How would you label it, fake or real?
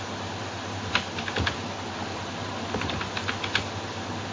real